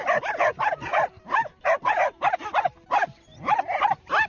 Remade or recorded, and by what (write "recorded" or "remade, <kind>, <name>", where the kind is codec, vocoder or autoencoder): remade, vocoder, BigVGAN v2